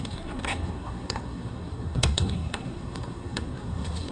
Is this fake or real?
fake